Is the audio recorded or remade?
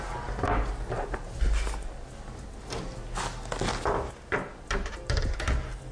recorded